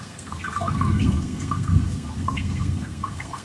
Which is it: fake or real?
fake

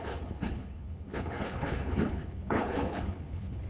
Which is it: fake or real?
fake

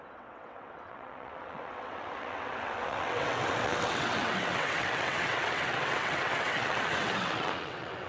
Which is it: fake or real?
fake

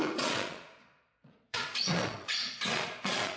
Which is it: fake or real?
fake